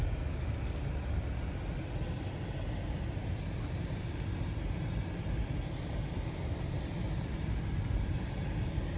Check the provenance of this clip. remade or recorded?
recorded